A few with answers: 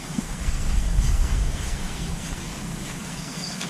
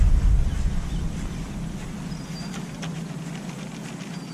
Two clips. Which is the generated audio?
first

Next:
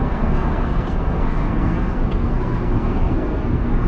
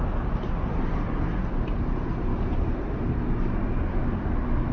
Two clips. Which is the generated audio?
first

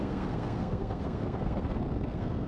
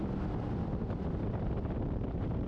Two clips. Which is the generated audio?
first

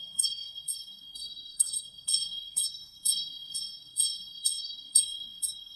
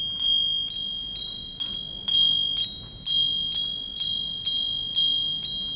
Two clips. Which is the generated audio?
first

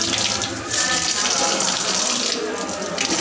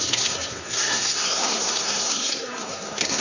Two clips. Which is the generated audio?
second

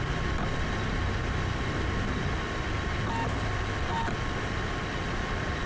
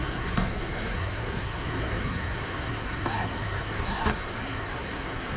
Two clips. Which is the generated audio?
second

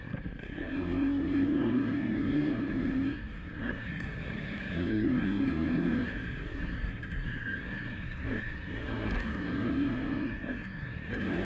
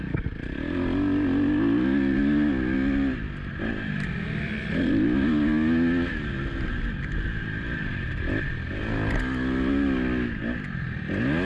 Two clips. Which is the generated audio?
first